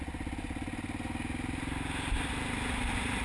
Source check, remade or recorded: recorded